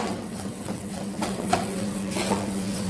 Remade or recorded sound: remade